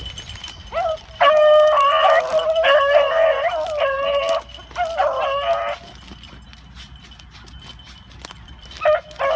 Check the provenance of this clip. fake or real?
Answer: real